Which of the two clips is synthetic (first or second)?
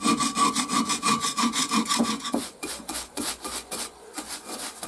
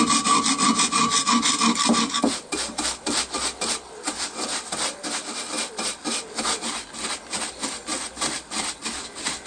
first